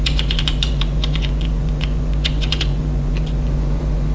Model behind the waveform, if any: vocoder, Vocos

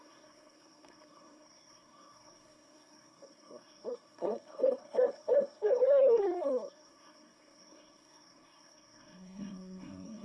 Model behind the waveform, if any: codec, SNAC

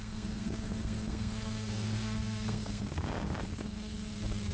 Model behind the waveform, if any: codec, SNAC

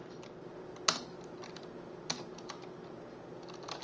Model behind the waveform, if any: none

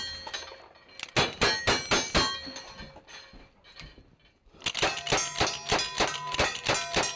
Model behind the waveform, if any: none